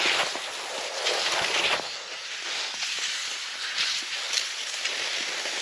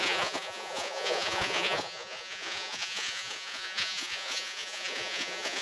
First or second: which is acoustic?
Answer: first